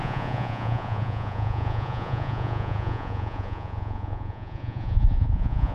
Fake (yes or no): yes